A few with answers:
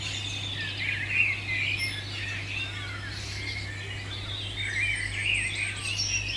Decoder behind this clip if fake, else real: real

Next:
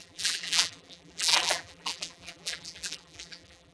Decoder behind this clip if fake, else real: fake, vocoder, BigVGAN v2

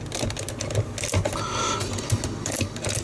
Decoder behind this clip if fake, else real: real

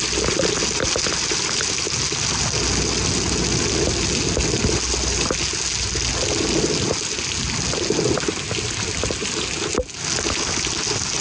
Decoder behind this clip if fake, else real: real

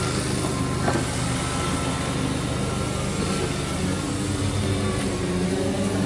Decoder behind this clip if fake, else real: real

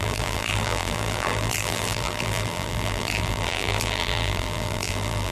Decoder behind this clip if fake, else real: fake, vocoder, BigVGAN v2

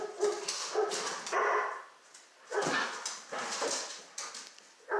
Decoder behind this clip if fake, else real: real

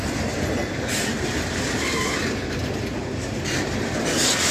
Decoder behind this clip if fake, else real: real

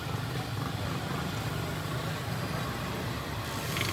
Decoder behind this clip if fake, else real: real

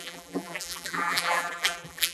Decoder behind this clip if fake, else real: fake, vocoder, BigVGAN v2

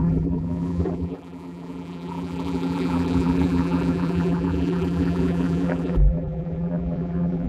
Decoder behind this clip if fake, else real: fake, vocoder, BigVGAN v2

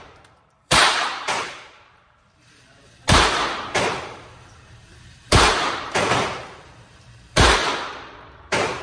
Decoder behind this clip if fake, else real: fake, vocoder, BigVGAN v2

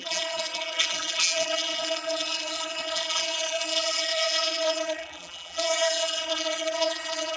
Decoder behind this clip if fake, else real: fake, vocoder, BigVGAN v2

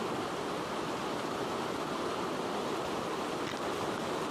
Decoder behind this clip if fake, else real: real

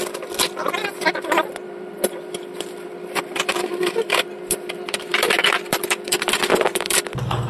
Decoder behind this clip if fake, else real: fake, vocoder, BigVGAN v2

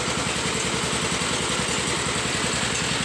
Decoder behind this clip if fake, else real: real